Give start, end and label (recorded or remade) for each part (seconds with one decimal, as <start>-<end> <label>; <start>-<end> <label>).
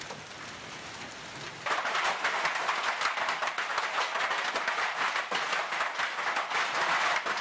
0.0-7.4 recorded